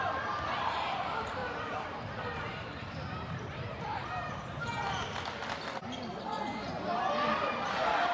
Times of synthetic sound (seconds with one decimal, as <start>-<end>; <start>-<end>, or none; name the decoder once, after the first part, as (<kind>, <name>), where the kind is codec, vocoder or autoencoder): 1.4-4.8 (vocoder, BigVGAN v2)